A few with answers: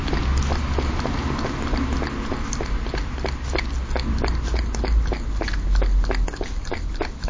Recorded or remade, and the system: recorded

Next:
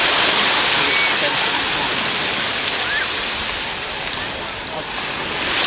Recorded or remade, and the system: recorded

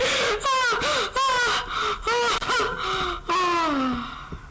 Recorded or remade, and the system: recorded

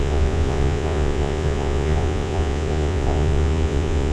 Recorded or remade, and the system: remade, vocoder, Vocos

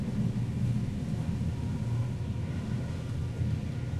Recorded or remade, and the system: recorded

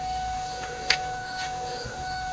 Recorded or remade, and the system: remade, autoencoder, DAC-VAE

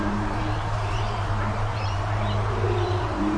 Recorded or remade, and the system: remade, vocoder, BigVGAN v2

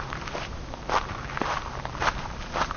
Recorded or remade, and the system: remade, vocoder, BigVGAN v2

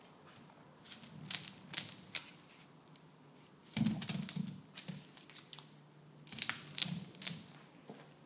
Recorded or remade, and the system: recorded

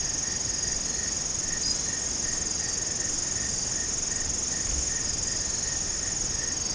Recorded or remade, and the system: recorded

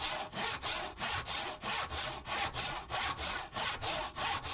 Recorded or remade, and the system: recorded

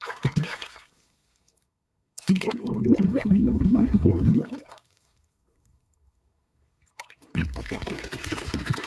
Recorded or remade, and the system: remade, codec, SNAC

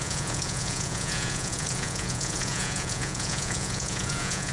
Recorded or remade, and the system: remade, vocoder, Vocos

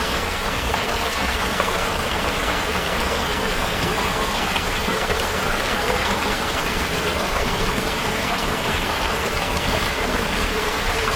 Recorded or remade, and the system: remade, codec, SNAC